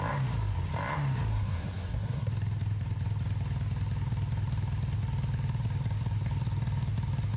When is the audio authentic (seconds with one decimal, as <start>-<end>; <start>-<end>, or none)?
0.0-1.3; 2.3-7.4